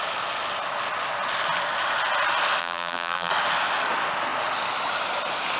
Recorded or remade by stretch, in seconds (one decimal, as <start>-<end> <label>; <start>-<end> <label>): 0.0-2.6 recorded; 2.6-3.3 remade; 3.3-5.6 recorded